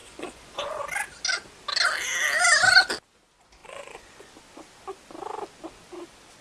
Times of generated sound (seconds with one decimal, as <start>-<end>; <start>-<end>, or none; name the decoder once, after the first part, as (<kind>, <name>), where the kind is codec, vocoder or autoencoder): 0.0-0.8 (vocoder, Vocos); 3.6-4.3